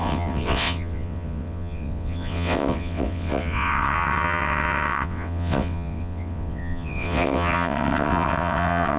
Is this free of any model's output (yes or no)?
no